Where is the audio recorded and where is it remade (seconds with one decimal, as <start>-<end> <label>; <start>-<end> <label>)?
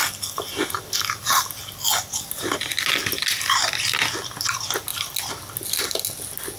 0.0-6.6 recorded